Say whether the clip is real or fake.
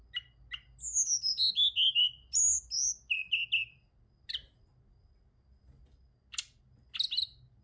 real